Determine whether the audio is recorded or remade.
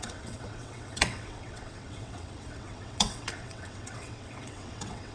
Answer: remade